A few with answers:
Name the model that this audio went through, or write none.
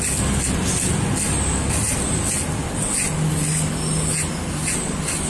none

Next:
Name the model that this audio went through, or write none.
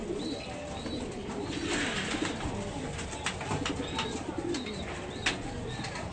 none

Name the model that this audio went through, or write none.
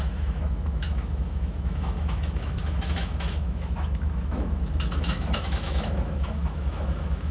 autoencoder, DAC-VAE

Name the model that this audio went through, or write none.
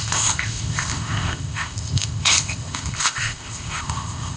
codec, ZipCodec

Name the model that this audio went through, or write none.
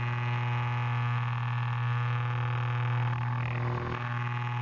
none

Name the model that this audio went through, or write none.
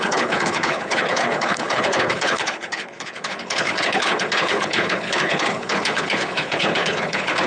codec, HILCodec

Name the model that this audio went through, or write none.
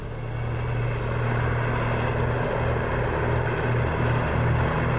none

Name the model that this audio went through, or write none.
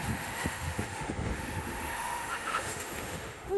autoencoder, DAC-VAE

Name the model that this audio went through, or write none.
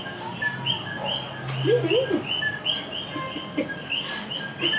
none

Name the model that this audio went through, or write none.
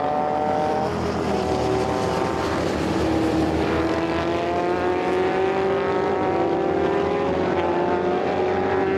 none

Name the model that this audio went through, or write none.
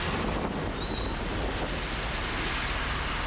none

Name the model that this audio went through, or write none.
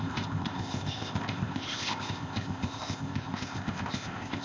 codec, ZipCodec